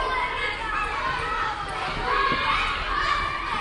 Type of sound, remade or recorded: recorded